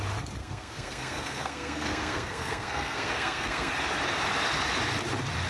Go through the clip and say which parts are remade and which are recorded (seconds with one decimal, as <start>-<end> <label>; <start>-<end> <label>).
0.0-0.4 recorded; 0.4-3.7 remade; 3.7-5.5 recorded